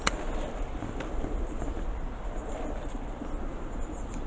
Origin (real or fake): real